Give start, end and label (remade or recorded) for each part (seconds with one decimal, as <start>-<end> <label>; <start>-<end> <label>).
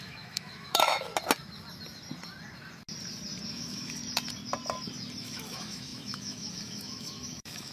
0.0-1.1 remade; 1.1-3.5 recorded; 3.5-4.0 remade; 4.0-5.2 recorded; 5.2-7.7 remade